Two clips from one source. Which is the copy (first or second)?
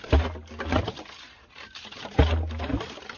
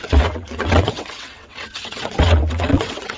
second